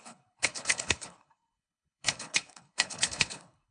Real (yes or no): no